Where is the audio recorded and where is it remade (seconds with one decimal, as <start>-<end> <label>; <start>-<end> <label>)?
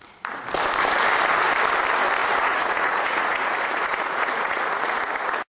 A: 0.0-2.2 recorded; 2.2-5.1 remade; 5.1-5.5 recorded